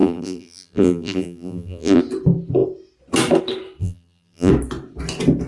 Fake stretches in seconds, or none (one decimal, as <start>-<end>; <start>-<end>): 0.0-2.0; 3.8-4.5